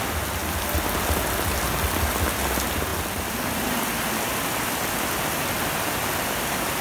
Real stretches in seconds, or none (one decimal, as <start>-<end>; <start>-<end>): 0.0-6.8